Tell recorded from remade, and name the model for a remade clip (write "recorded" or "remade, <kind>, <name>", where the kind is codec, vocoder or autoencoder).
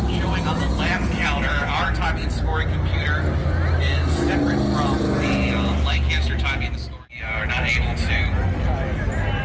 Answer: recorded